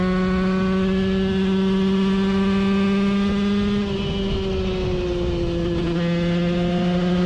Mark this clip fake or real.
real